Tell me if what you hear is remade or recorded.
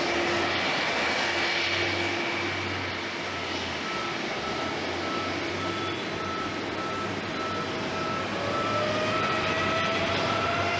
recorded